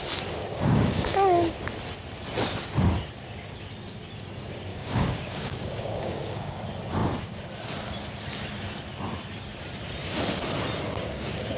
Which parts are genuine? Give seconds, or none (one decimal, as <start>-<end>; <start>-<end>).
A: 0.0-0.4; 1.6-4.7; 6.6-11.0